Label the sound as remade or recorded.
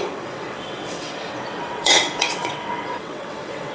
remade